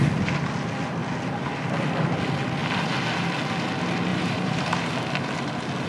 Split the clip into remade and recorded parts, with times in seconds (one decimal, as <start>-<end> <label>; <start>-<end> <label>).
0.0-4.1 recorded; 4.1-4.9 remade; 4.9-5.9 recorded